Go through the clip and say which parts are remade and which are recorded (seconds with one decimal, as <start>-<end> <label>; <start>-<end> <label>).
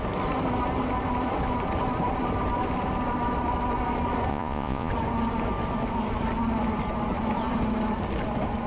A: 0.0-4.3 recorded; 4.3-4.9 remade; 4.9-8.7 recorded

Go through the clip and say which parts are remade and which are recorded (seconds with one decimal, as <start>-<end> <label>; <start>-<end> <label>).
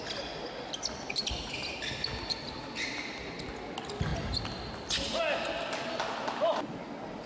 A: 0.0-7.3 recorded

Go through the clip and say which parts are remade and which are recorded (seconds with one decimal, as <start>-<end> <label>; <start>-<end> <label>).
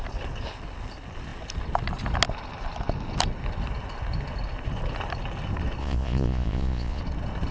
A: 0.0-5.8 recorded; 5.8-7.0 remade; 7.0-7.5 recorded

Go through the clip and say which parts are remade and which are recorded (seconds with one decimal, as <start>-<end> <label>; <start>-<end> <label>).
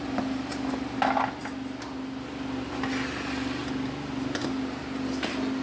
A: 0.0-5.6 recorded